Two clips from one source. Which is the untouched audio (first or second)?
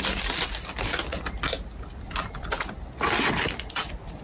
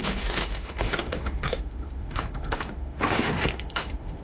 first